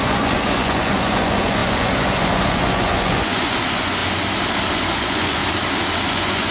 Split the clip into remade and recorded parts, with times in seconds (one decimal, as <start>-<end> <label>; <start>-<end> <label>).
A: 0.0-4.0 remade; 4.0-4.7 recorded; 4.7-5.4 remade; 5.4-6.1 recorded; 6.1-6.5 remade